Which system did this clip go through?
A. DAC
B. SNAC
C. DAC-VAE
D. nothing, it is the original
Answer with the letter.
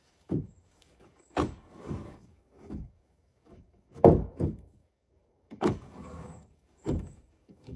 A